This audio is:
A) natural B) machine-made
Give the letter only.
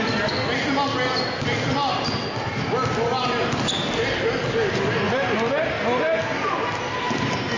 A